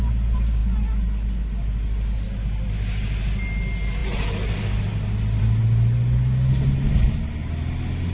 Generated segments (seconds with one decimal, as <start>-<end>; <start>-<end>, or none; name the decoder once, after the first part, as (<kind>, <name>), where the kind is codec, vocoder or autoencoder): none